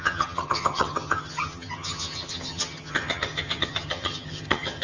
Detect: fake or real fake